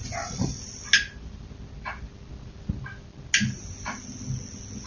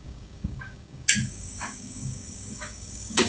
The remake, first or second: second